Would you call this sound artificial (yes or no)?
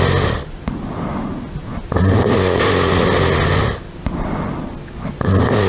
no